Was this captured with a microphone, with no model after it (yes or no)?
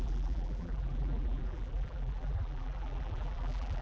no